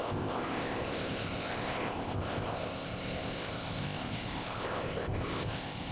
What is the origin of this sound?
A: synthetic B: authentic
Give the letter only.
A